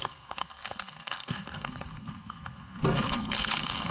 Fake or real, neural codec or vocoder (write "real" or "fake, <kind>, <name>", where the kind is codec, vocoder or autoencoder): fake, codec, SNAC